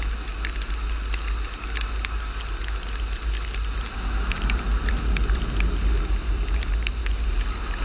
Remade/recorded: recorded